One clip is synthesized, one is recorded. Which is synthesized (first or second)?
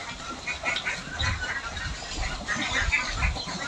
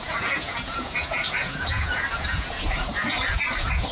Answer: second